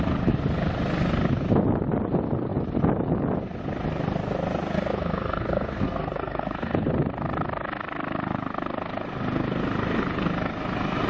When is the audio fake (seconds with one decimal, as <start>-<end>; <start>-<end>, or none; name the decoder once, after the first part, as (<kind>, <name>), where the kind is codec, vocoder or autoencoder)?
4.7-6.9 (codec, SNAC)